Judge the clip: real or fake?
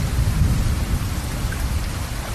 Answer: real